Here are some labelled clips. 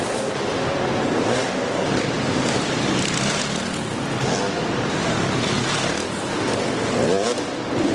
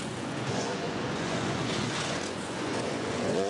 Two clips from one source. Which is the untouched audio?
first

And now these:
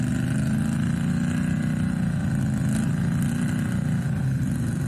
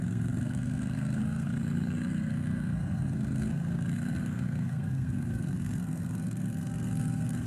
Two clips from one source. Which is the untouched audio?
first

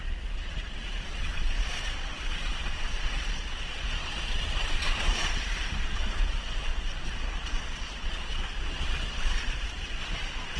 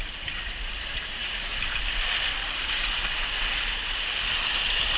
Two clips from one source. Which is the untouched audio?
second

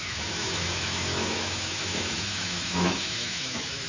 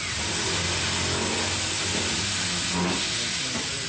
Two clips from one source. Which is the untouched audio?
second